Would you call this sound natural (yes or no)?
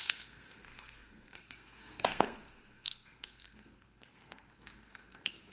no